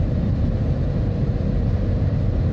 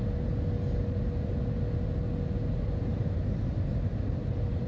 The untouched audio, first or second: second